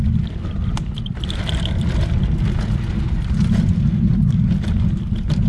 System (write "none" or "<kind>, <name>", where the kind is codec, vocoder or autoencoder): none